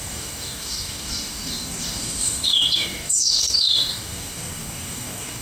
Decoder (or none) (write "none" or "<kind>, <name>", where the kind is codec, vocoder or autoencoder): codec, DAC